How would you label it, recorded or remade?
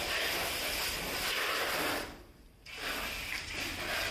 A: remade